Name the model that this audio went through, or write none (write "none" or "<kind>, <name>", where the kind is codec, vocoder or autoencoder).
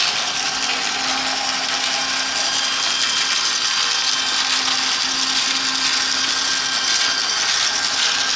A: none